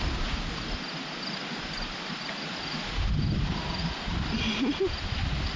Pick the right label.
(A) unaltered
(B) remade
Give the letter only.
A